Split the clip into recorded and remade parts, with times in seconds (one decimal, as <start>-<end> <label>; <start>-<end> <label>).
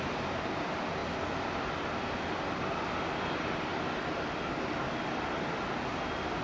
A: 0.0-6.4 recorded